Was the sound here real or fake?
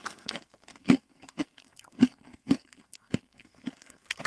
fake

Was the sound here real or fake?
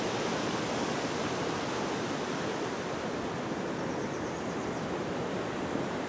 real